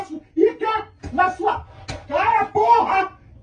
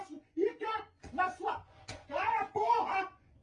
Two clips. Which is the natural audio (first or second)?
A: first